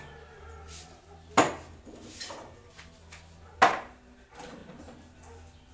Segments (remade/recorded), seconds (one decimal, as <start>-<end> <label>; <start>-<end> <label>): 0.0-5.7 recorded